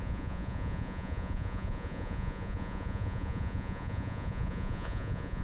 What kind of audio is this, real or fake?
fake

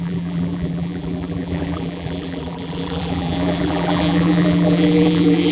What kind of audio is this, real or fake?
fake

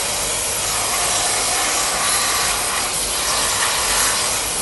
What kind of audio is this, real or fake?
real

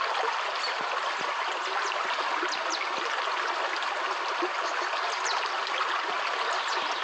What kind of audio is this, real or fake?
real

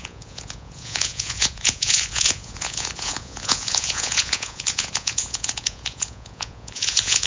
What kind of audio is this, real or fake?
fake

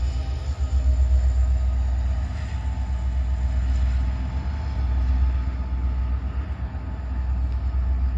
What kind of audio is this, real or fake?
real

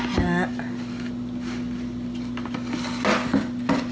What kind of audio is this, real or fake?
real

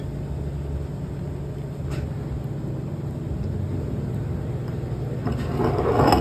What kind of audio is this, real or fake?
real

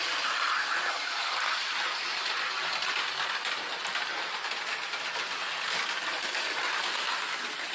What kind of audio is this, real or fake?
real